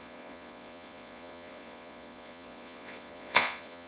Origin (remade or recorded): remade